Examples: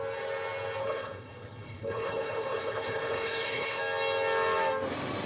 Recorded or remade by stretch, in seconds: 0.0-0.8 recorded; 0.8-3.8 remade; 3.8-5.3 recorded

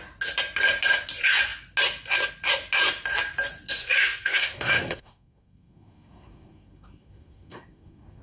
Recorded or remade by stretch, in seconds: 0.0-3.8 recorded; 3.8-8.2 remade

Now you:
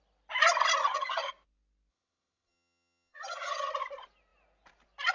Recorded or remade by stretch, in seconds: 0.0-0.8 recorded; 0.8-1.3 remade; 1.3-1.9 recorded; 1.9-3.7 remade; 3.7-5.1 recorded